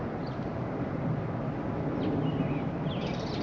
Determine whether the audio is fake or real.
real